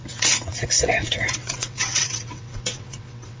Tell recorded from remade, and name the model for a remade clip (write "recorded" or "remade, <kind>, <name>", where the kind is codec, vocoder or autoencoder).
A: remade, vocoder, WaveNeXt